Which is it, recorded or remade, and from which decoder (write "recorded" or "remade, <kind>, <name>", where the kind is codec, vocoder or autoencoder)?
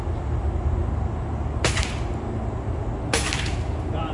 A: recorded